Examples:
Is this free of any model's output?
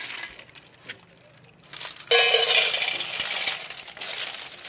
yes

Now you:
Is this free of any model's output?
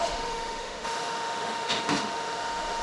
no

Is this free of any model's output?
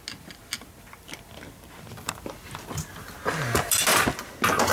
yes